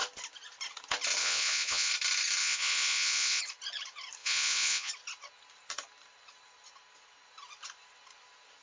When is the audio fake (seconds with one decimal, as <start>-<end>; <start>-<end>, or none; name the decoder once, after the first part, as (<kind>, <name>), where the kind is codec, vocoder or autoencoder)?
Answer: 1.2-1.9 (vocoder, Vocos); 2.4-3.4; 4.2-4.9